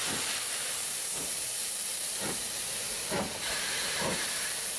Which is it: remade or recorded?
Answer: remade